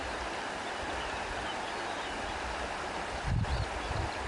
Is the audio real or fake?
real